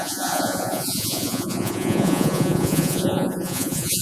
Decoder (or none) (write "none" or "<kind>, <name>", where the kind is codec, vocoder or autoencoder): vocoder, Vocos